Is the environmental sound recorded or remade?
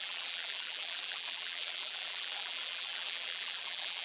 remade